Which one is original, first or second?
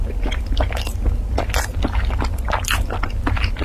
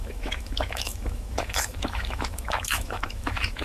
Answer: first